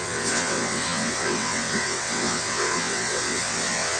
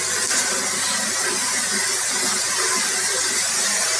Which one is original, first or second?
second